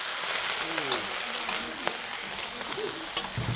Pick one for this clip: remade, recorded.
recorded